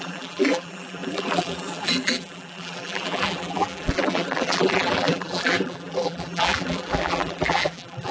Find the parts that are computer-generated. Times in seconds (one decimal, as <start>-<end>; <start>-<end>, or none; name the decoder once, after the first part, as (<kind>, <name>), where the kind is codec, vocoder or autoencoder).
0.0-8.1 (vocoder, BigVGAN v2)